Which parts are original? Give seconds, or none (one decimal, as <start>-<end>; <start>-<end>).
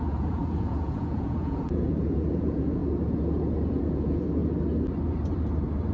2.8-3.7; 4.4-5.9